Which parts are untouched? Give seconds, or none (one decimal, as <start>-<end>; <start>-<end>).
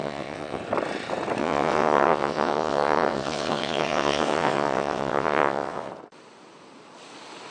0.6-1.4; 5.9-7.5